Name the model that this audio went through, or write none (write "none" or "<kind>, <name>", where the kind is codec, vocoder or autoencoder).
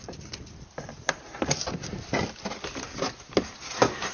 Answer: none